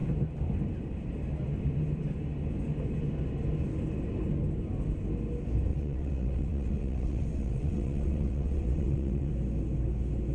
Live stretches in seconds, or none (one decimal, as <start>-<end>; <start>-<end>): 0.0-5.7; 9.3-10.3